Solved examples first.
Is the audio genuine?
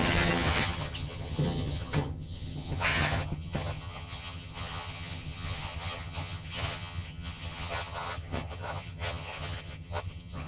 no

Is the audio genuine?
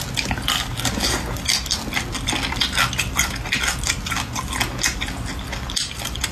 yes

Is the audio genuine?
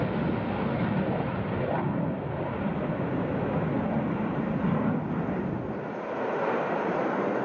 yes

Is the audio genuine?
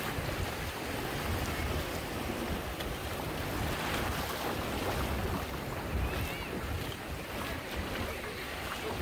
yes